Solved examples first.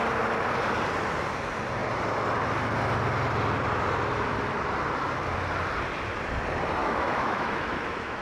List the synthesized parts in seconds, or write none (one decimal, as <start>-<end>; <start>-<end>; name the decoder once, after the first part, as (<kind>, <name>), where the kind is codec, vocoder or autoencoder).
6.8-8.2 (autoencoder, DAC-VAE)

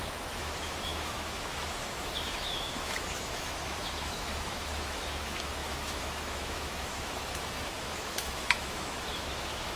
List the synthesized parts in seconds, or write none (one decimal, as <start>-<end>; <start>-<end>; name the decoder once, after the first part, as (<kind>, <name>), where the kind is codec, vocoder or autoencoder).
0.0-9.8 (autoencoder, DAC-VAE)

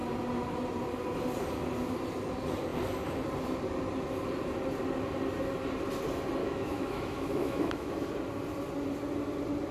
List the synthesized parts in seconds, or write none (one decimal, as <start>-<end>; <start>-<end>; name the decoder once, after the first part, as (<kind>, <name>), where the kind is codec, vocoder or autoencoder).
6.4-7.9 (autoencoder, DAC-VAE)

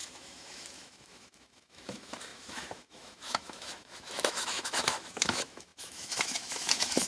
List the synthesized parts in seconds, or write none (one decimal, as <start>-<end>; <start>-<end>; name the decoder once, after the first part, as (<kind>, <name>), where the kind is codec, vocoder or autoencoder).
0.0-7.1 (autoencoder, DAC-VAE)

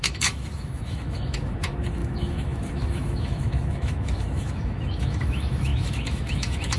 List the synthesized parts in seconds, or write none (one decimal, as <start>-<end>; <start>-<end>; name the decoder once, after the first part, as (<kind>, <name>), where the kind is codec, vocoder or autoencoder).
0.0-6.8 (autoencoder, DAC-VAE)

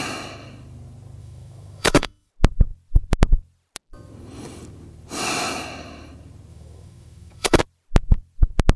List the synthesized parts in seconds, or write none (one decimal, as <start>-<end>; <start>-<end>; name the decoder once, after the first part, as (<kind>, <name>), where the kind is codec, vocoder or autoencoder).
1.2-2.3 (autoencoder, DAC-VAE); 6.5-7.6

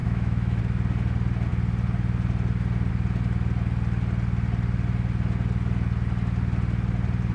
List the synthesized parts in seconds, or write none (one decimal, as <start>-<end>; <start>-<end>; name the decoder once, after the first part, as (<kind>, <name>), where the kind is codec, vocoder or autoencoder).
0.0-0.6 (autoencoder, DAC-VAE)